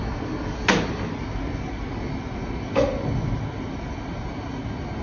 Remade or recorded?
recorded